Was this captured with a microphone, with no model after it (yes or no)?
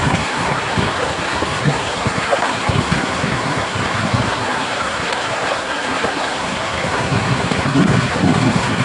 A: no